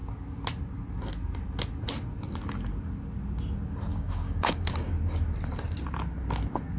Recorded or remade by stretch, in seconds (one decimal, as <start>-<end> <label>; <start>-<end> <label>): 0.0-3.9 recorded; 3.9-4.7 remade; 4.7-6.8 recorded

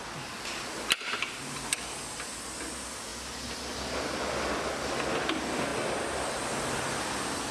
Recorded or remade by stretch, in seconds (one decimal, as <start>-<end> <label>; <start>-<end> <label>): 0.0-7.5 recorded